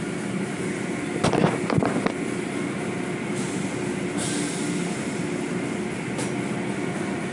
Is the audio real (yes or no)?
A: yes